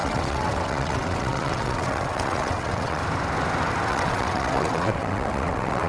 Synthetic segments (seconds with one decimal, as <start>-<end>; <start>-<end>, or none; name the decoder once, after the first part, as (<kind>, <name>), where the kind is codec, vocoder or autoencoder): 0.0-3.0 (vocoder, WaveNeXt); 3.9-5.9